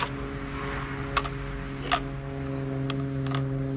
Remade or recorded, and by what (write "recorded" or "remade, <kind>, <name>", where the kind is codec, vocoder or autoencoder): recorded